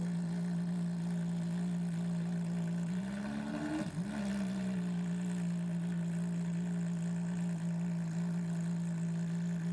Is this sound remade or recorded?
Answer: recorded